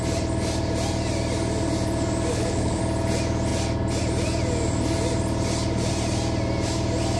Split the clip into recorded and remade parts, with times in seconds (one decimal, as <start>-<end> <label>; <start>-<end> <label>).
0.0-2.3 recorded; 2.3-2.8 remade; 2.8-7.2 recorded